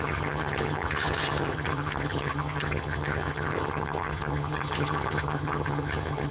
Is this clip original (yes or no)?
no